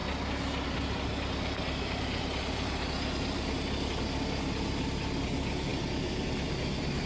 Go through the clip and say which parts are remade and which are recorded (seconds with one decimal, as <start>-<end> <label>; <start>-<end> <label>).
0.0-7.1 recorded